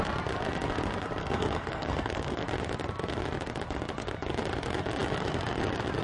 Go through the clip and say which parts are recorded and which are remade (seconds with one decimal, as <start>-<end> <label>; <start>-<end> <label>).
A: 0.0-1.2 recorded; 1.2-2.4 remade; 2.4-6.0 recorded